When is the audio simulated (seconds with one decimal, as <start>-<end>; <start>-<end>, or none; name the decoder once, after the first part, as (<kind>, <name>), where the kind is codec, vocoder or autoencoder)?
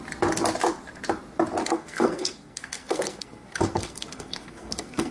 1.6-5.1 (codec, SNAC)